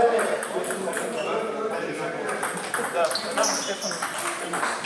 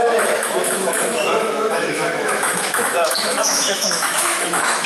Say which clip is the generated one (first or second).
second